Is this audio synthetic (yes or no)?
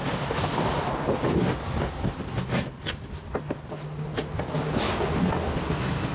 no